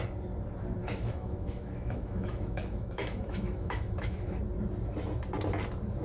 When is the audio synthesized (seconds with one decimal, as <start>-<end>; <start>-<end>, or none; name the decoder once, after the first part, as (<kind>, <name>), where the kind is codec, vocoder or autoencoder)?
0.8-4.4 (autoencoder, DAC-VAE)